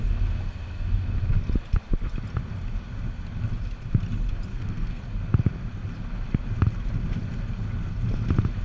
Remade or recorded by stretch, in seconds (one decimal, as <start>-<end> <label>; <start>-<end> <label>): 0.0-4.5 recorded; 4.5-5.0 remade; 5.0-8.6 recorded